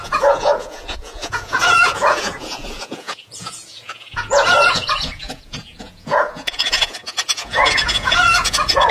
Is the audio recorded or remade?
remade